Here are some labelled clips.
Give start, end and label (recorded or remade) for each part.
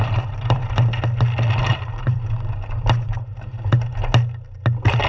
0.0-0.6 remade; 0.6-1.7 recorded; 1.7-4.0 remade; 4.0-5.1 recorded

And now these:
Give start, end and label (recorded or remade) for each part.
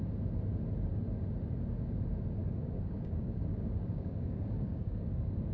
0.0-2.4 recorded; 2.4-5.5 remade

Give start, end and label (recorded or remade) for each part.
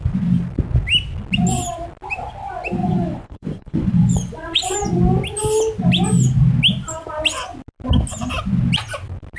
0.0-2.8 recorded; 2.8-4.7 remade; 4.7-9.4 recorded